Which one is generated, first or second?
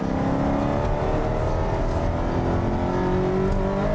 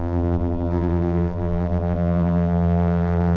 second